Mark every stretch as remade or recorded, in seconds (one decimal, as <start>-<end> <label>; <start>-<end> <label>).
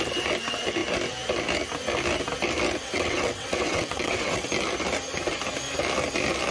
0.0-2.8 recorded; 2.8-4.5 remade; 4.5-6.5 recorded